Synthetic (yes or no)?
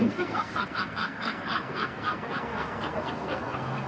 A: yes